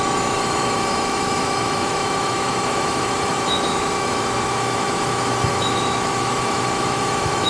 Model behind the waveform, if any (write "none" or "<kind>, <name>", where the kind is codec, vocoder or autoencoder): autoencoder, DAC-VAE